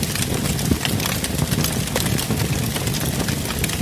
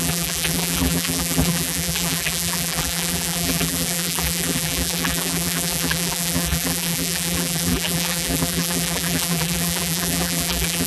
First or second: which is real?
first